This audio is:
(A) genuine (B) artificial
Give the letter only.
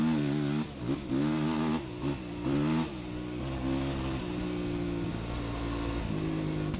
A